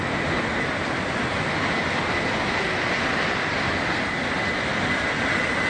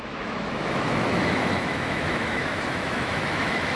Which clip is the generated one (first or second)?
second